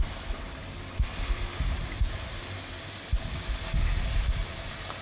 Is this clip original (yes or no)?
yes